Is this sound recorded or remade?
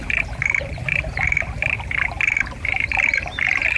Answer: remade